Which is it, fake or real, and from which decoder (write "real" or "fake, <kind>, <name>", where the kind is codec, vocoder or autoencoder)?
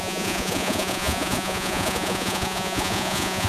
fake, vocoder, Vocos